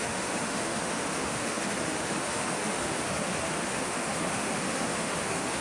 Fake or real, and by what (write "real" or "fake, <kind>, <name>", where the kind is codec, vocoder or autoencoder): fake, autoencoder, DAC-VAE